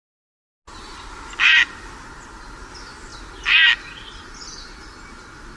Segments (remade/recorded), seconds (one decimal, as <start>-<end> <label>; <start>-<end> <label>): 0.0-5.6 recorded